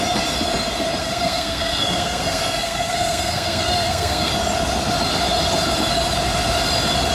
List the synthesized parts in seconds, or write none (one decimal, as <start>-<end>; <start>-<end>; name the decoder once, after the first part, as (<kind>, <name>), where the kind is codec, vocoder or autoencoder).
1.0-4.3 (codec, SNAC)